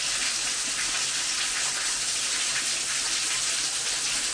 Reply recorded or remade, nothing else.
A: recorded